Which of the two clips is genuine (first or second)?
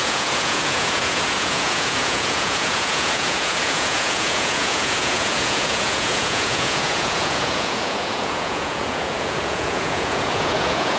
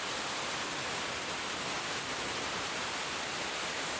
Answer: second